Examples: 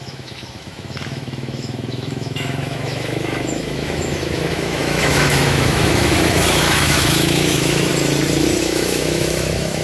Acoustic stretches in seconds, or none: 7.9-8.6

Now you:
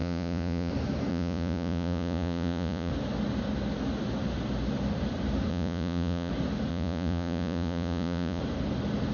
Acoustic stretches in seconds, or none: 0.7-1.1; 2.9-5.5; 6.3-6.7; 8.4-9.1